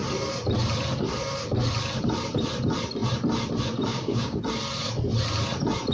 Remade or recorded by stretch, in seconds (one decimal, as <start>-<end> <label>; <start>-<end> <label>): 0.0-3.9 recorded; 3.9-4.4 remade; 4.4-5.9 recorded